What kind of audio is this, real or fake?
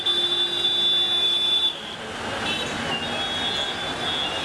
real